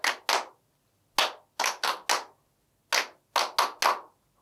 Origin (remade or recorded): recorded